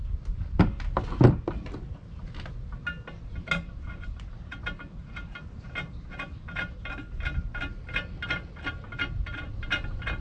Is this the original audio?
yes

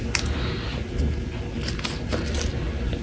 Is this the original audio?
yes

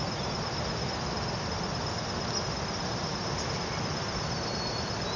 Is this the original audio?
yes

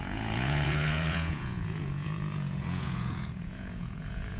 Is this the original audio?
no